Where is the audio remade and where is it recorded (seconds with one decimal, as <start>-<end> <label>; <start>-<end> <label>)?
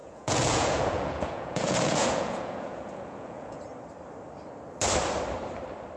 0.0-3.6 remade; 3.6-6.0 recorded